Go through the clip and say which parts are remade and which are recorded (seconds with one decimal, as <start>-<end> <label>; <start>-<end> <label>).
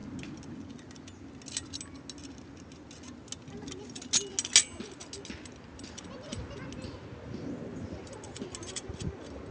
0.0-9.5 recorded